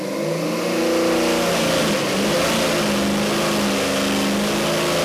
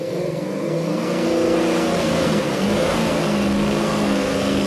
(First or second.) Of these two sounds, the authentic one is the first